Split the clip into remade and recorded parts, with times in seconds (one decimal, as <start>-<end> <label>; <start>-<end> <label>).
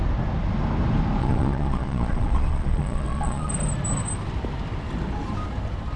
0.0-1.2 recorded; 1.2-3.5 remade; 3.5-6.0 recorded